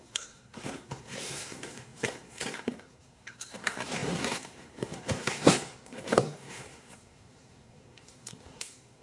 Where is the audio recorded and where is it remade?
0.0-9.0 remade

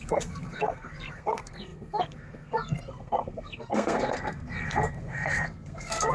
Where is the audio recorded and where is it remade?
0.0-6.1 remade

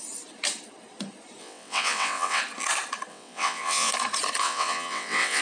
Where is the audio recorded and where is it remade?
0.0-1.4 recorded; 1.4-2.4 remade; 2.4-3.1 recorded; 3.1-3.9 remade; 3.9-4.4 recorded; 4.4-5.4 remade

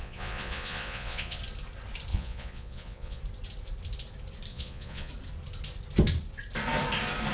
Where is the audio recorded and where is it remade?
0.0-1.4 remade; 1.4-2.1 recorded; 2.1-3.2 remade; 3.2-4.5 recorded; 4.5-5.1 remade; 5.1-7.3 recorded

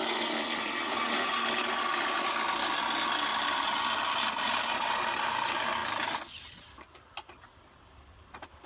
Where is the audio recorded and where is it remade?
0.0-8.7 recorded